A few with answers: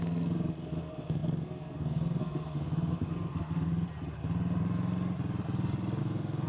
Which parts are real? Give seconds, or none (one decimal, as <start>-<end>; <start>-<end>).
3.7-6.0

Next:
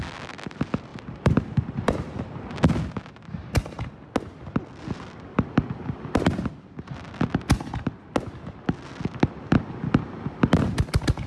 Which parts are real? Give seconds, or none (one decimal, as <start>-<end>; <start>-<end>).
0.0-0.9; 2.4-11.3

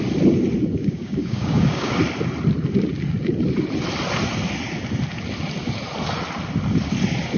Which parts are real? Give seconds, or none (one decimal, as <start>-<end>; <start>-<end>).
0.0-0.8; 1.9-7.4

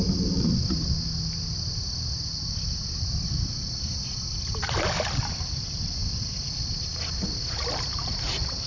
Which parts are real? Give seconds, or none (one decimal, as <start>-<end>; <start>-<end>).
0.6-5.2; 6.0-7.9

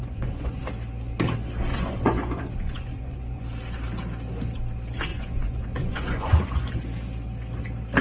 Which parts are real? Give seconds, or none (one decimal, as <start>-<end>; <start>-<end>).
0.6-1.7; 3.4-5.1; 6.7-8.0

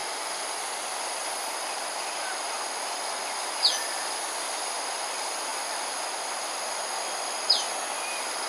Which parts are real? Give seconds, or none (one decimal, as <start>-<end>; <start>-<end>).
0.0-8.5

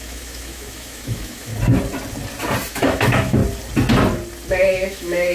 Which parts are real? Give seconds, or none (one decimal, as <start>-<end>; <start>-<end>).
1.5-2.7; 3.4-4.5

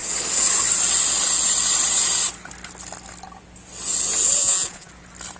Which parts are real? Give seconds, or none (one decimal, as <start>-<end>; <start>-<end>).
0.0-4.4; 4.9-5.4